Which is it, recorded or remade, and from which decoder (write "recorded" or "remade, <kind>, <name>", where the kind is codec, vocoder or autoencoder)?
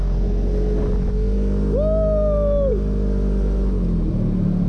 recorded